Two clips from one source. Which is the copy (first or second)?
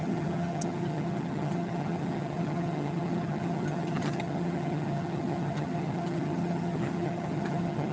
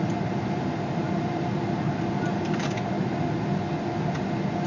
first